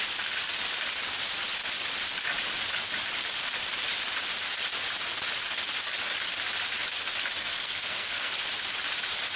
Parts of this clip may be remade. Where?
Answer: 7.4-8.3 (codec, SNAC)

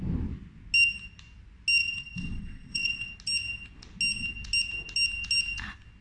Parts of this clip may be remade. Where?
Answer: 1.8-3.1 (vocoder, WaveNeXt)

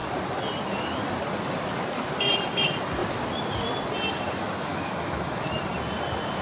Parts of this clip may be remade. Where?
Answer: 4.7-5.4 (autoencoder, DAC-VAE)

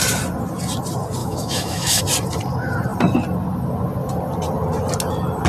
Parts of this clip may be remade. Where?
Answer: 1.2-2.0 (autoencoder, DAC-VAE)